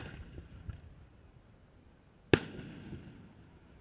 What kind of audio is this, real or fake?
real